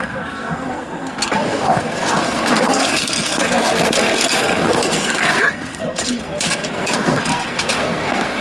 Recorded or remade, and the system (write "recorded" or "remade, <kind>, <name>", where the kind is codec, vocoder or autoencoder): remade, codec, SNAC